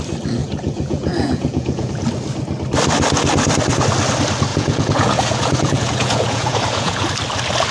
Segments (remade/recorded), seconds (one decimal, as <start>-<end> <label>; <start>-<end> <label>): 0.0-0.4 recorded; 0.4-1.9 remade; 1.9-4.5 recorded; 4.5-7.1 remade; 7.1-7.7 recorded